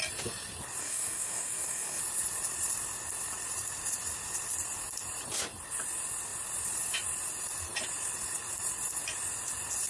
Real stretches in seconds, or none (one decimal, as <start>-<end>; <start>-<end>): 0.0-0.8; 2.0-9.9